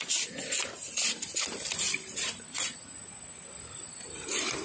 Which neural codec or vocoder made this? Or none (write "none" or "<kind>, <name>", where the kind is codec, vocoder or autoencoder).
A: vocoder, BigVGAN v2